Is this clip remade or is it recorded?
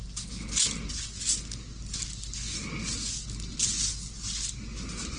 recorded